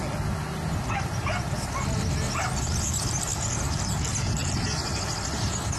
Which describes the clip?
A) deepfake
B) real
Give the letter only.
B